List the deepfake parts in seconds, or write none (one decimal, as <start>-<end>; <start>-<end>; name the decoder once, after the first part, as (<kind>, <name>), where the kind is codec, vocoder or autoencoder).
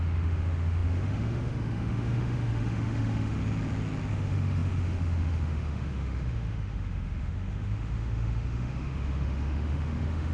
0.0-3.4 (autoencoder, DAC-VAE); 4.1-10.3